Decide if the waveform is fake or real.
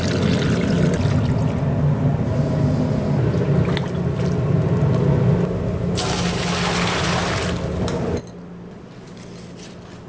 real